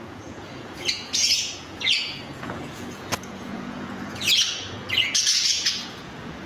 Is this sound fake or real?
fake